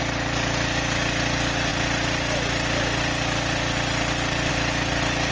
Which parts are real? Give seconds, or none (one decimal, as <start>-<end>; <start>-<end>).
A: 0.0-5.3